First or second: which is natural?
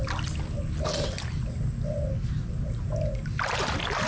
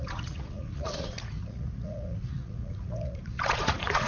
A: first